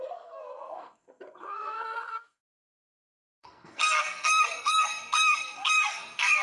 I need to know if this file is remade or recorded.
remade